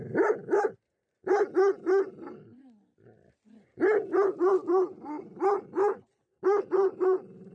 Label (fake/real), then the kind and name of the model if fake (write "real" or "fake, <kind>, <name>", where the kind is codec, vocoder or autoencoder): real